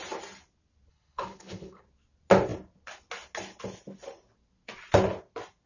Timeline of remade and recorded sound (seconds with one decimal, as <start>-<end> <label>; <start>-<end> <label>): 0.0-0.9 recorded; 0.9-1.8 remade; 1.8-5.7 recorded